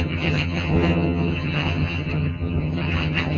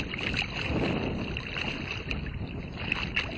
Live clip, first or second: second